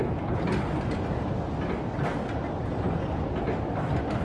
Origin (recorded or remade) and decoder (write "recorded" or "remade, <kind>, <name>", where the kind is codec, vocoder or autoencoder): recorded